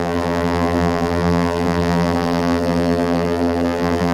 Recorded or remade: remade